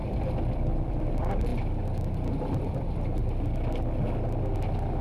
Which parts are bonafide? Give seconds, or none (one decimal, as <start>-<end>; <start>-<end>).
1.5-2.6; 3.2-5.0